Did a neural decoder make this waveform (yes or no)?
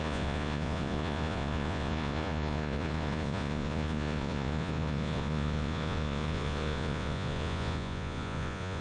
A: yes